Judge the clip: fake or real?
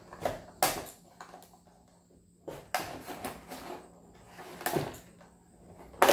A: real